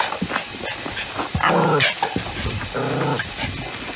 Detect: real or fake real